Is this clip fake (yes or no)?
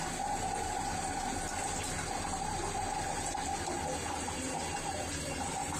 no